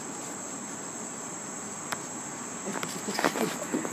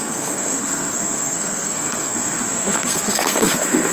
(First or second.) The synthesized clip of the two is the second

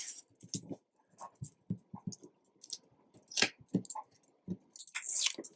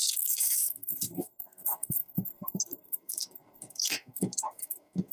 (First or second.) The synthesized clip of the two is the second